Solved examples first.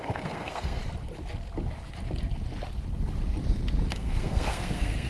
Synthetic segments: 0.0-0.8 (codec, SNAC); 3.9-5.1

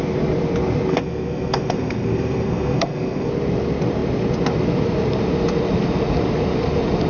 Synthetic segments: 0.9-3.3 (codec, SNAC)